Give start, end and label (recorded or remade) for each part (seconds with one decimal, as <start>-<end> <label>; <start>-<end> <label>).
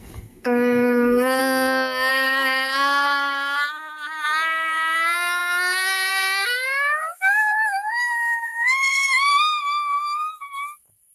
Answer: 0.0-1.4 remade; 1.4-2.1 recorded; 2.1-11.1 remade